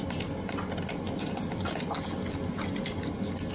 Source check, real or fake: real